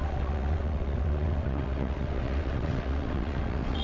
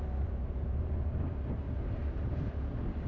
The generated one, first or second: first